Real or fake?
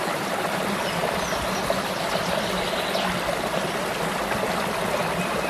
real